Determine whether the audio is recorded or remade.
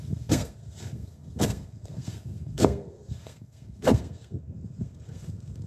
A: remade